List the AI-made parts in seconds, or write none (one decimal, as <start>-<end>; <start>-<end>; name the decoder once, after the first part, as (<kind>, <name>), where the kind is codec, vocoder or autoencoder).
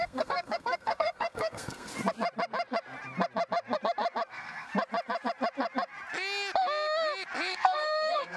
0.0-1.9 (codec, SNAC); 4.3-4.7; 7.5-8.4